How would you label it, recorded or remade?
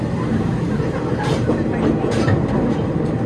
remade